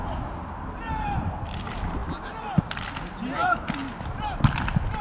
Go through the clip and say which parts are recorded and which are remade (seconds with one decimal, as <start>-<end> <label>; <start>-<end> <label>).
0.0-5.0 recorded